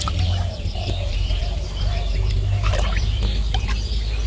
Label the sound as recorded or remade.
recorded